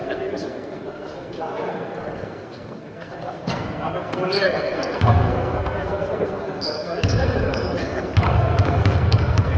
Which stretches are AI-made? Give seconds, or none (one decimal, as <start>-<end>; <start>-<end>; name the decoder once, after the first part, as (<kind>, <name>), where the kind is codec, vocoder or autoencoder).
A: 0.0-9.6 (codec, SNAC)